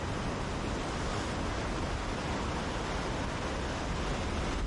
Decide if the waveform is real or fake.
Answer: real